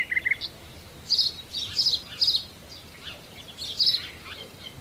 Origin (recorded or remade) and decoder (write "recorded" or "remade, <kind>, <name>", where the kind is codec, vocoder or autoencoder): recorded